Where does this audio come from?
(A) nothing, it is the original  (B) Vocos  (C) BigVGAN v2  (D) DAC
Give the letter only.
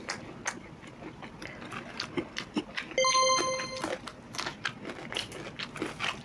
A